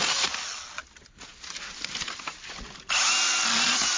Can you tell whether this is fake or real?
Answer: real